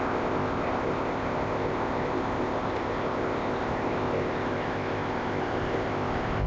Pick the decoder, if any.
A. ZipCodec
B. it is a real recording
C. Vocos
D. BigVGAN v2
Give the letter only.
A